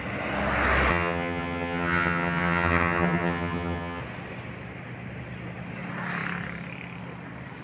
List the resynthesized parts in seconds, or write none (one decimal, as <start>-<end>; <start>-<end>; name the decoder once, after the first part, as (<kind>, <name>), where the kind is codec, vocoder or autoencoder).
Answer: 0.9-4.0 (vocoder, HiFi-GAN)